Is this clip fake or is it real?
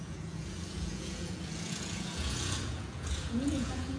fake